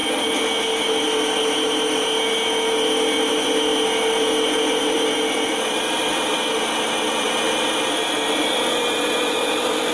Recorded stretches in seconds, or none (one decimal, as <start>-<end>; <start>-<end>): 0.0-4.8